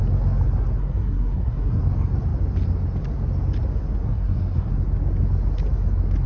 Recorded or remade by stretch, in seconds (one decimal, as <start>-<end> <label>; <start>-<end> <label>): 0.0-0.8 recorded; 0.8-1.8 remade; 1.8-4.0 recorded; 4.0-4.7 remade; 4.7-6.3 recorded